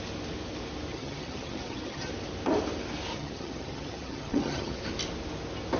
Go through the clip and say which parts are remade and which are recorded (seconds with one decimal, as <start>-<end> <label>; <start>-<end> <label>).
0.0-0.9 recorded; 0.9-2.1 remade; 2.1-3.1 recorded; 3.1-4.8 remade; 4.8-5.8 recorded